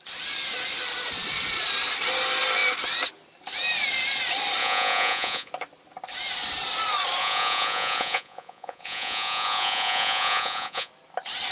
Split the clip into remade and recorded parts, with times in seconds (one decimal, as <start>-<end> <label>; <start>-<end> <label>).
0.0-4.6 recorded; 4.6-5.5 remade; 5.5-7.2 recorded; 7.2-10.9 remade; 10.9-11.5 recorded